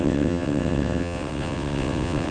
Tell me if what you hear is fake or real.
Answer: fake